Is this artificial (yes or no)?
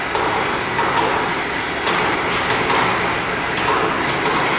no